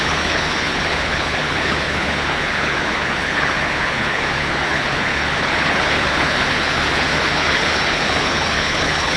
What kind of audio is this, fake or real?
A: fake